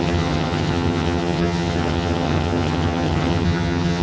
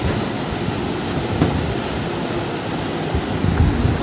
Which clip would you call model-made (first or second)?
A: first